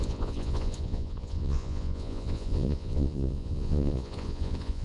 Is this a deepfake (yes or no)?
yes